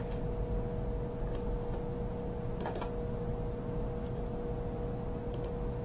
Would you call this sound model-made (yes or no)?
no